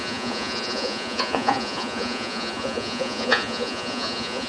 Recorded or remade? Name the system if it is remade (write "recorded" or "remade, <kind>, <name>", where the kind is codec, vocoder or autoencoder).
remade, vocoder, Vocos